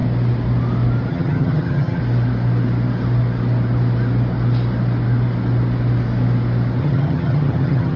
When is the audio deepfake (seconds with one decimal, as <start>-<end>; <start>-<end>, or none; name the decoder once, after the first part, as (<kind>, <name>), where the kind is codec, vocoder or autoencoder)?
1.1-2.0 (vocoder, HiFi-GAN); 6.8-8.0